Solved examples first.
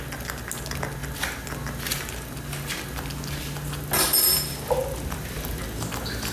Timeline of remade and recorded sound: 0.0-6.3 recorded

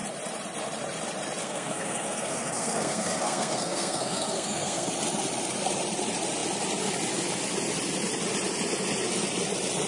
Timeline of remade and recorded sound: 0.0-1.4 recorded; 1.4-4.9 remade; 4.9-9.9 recorded